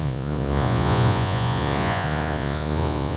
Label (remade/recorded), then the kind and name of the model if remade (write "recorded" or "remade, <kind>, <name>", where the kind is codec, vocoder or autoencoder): remade, vocoder, Vocos